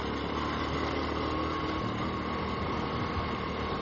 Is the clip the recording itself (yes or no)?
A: yes